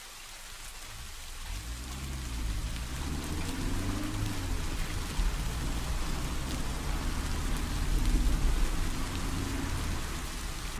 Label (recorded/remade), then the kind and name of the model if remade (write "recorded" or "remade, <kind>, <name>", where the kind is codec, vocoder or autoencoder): recorded